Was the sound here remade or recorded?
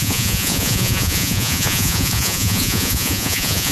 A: remade